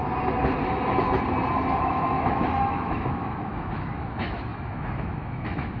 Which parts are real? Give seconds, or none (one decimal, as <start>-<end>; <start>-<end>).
0.0-1.7